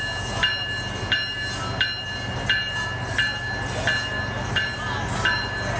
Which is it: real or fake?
real